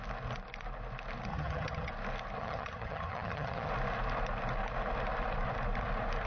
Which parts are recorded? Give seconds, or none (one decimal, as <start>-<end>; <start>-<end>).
0.0-1.3; 1.9-2.4; 3.7-6.3